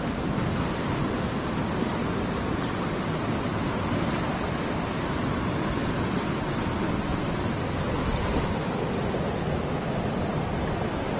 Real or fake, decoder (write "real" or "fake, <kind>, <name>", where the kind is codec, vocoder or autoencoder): real